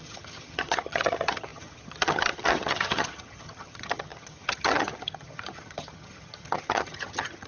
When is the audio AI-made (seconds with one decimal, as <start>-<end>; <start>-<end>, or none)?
0.0-7.5